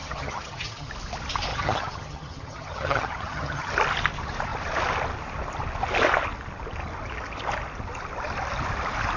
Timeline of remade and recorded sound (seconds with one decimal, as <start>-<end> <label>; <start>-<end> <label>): 0.0-0.9 remade; 0.9-1.5 recorded; 1.5-3.7 remade; 3.7-9.2 recorded